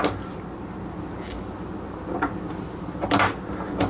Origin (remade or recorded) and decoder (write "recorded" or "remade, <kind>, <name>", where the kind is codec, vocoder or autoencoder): recorded